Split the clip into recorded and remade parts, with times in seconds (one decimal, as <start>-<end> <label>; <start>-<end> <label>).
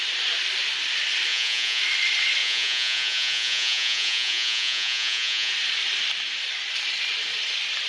0.0-1.3 recorded; 1.3-1.8 remade; 1.8-2.4 recorded; 2.4-5.5 remade; 5.5-7.9 recorded